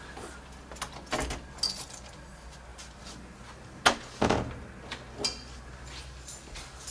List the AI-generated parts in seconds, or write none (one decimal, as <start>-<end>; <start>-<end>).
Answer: none